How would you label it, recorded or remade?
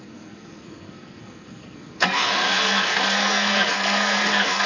remade